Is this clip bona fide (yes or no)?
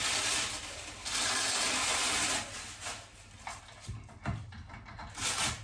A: yes